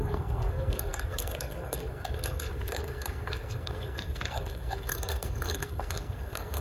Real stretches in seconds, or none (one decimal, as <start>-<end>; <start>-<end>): none